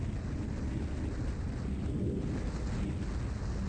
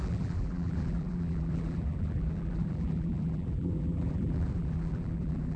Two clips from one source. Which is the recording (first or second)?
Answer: first